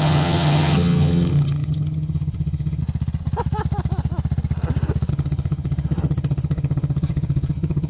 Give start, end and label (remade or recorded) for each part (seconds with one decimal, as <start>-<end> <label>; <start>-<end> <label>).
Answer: 0.0-2.8 remade; 2.8-5.1 recorded; 5.1-7.9 remade